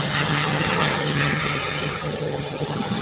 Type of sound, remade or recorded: remade